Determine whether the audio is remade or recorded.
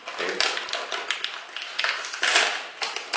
recorded